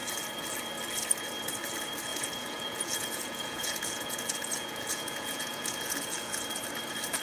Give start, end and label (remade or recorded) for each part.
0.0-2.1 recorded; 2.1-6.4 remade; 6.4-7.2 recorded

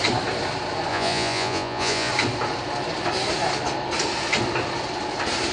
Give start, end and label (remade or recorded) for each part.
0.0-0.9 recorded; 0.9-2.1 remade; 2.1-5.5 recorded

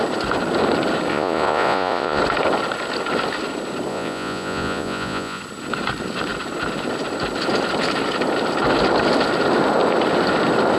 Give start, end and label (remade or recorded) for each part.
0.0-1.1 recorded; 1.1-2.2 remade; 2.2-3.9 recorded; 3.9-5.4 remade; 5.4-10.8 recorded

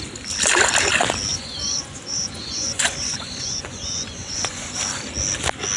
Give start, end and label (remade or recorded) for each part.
0.0-1.3 recorded; 1.3-4.8 remade; 4.8-5.8 recorded

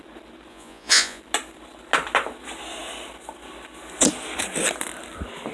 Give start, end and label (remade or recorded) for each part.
0.0-0.5 recorded; 0.5-1.2 remade; 1.2-5.5 recorded

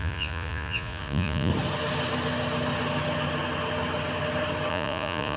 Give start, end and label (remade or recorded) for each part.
0.0-1.5 remade; 1.5-4.7 recorded; 4.7-5.4 remade